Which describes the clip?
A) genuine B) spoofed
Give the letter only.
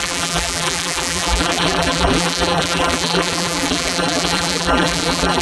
B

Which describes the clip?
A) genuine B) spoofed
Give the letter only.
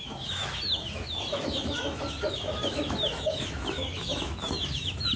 B